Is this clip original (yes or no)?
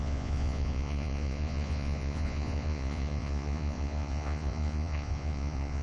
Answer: no